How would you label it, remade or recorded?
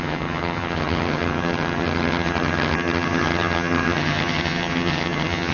remade